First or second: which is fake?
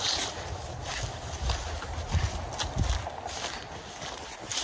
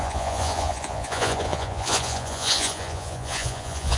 second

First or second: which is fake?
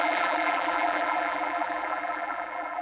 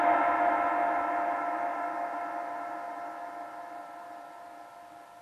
first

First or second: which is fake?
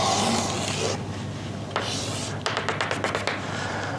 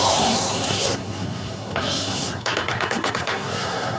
second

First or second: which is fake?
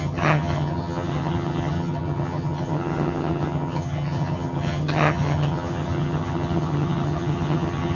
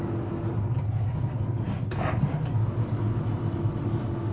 first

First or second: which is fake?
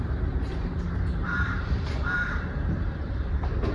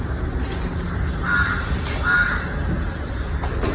first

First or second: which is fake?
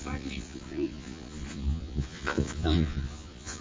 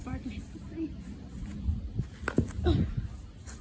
first